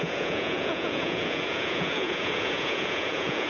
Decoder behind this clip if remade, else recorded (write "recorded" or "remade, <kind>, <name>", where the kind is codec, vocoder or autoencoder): remade, vocoder, Vocos